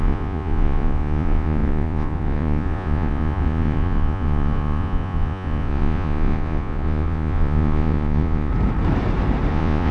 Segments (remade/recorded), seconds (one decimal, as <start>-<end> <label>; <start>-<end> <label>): 0.0-8.5 remade; 8.5-9.5 recorded; 9.5-9.9 remade